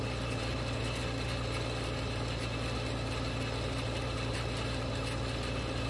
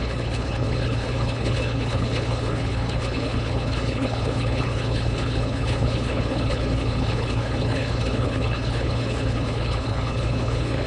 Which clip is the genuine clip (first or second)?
first